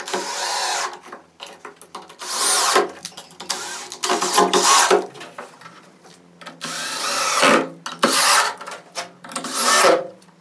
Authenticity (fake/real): real